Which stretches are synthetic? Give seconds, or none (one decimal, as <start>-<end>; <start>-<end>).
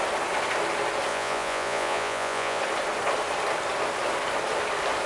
1.1-2.6